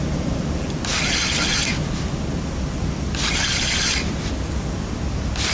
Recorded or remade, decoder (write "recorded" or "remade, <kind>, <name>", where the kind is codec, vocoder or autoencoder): recorded